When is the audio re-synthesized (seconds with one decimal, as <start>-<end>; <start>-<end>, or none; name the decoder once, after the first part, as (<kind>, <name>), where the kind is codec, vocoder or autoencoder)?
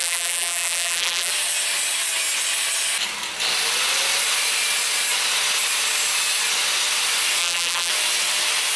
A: 0.0-1.3 (vocoder, BigVGAN v2); 7.4-7.9